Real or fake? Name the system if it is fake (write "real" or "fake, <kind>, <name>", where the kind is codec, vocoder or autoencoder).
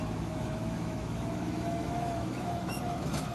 fake, autoencoder, DAC-VAE